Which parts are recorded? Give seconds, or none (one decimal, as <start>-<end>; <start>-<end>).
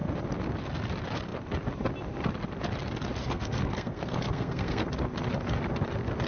0.0-3.2; 4.9-6.3